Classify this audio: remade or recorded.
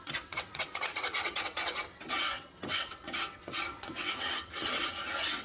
remade